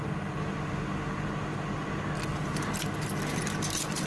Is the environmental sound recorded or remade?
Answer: recorded